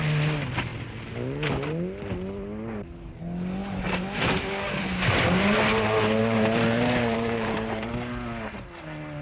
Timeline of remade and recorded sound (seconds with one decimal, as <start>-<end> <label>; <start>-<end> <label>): 0.0-3.6 recorded; 3.6-7.9 remade; 7.9-9.2 recorded